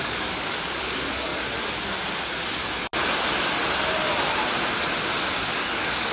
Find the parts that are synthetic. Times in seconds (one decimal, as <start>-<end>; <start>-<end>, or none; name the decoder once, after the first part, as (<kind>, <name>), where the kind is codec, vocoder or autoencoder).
0.0-1.3 (codec, DAC); 5.0-6.1